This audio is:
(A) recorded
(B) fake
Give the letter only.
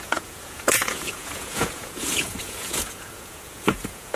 B